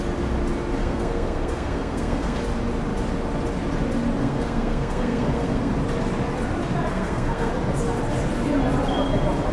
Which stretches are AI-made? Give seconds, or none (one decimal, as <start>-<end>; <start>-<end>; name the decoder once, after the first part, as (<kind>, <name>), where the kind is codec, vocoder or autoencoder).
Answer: 0.8-2.4 (codec, SNAC); 4.2-5.7; 6.9-7.5